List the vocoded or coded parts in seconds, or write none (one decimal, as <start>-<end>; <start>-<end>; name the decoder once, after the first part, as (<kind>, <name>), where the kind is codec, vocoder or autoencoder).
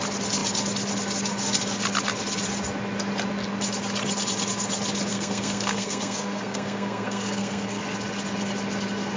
5.1-7.8 (codec, SNAC)